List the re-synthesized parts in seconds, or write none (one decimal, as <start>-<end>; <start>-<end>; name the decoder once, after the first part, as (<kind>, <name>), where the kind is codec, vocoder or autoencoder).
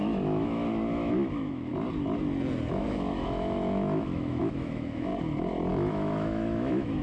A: 0.0-1.7 (autoencoder, DAC-VAE); 2.7-5.1; 5.7-7.0